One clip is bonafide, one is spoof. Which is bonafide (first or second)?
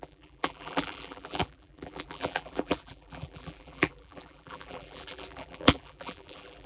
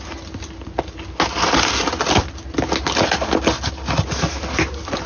second